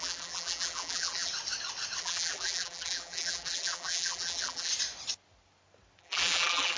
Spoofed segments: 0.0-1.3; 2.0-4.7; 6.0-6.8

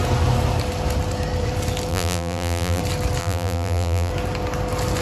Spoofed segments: 1.9-2.8; 3.2-4.1

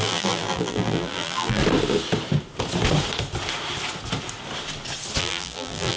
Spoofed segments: 0.0-1.6; 5.2-6.0

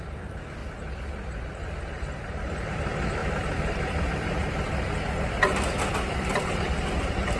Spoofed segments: 0.0-0.6; 1.8-4.4; 6.4-7.4